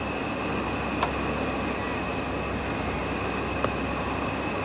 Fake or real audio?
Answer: real